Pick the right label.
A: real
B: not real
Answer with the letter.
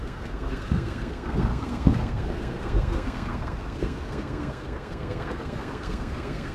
B